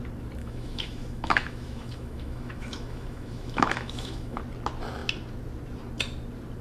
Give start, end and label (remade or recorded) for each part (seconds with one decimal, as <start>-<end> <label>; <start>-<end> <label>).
0.0-0.4 recorded; 0.4-4.4 remade; 4.4-6.6 recorded

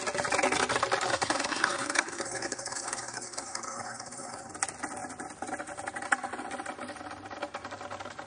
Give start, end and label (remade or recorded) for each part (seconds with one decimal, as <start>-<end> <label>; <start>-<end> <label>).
0.0-1.1 recorded; 1.1-4.5 remade; 4.5-8.3 recorded

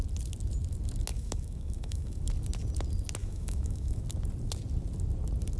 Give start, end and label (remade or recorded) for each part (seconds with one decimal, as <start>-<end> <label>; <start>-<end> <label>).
0.0-1.1 recorded; 1.1-2.2 remade; 2.2-3.2 recorded; 3.2-4.0 remade; 4.0-5.6 recorded

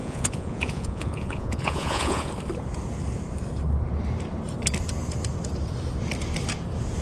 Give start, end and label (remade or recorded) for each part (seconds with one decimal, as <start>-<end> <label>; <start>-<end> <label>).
0.0-2.3 remade; 2.3-7.0 recorded

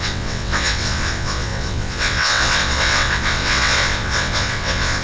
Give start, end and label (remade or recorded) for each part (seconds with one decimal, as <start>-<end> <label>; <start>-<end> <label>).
0.0-5.0 remade

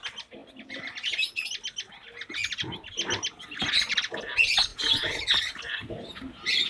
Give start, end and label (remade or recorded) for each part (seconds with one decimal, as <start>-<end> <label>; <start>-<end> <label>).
0.0-6.7 recorded